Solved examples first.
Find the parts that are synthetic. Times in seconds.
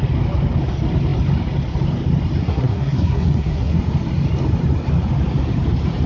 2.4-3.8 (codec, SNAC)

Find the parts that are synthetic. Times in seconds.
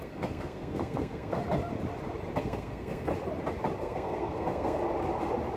0.0-1.4 (codec, SNAC); 2.4-3.1; 3.8-4.8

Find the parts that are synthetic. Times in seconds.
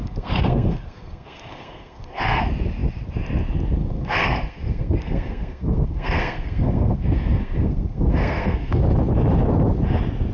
0.0-2.4 (codec, SNAC); 3.8-8.8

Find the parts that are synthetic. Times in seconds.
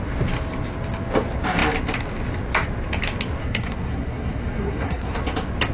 3.4-5.2 (codec, SNAC)